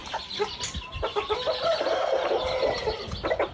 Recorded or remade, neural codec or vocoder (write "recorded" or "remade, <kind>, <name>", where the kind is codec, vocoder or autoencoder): recorded